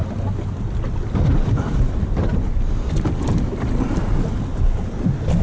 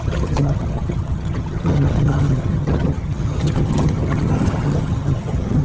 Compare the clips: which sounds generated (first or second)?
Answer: second